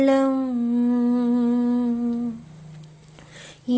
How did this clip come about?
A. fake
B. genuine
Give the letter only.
B